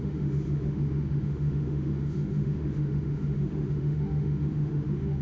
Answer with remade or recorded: remade